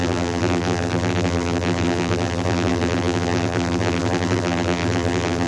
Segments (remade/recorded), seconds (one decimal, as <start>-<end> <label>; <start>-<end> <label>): 0.0-5.5 remade